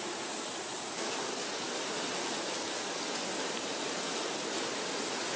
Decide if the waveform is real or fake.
real